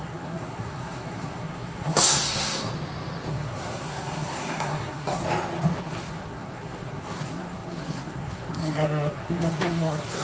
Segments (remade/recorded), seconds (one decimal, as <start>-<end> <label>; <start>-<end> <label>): 0.0-2.7 remade; 2.7-3.3 recorded; 3.3-5.2 remade; 5.2-5.8 recorded; 5.8-10.2 remade